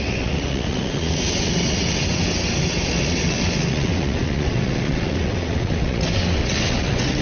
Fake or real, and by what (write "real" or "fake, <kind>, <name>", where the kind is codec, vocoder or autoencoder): fake, vocoder, WaveNeXt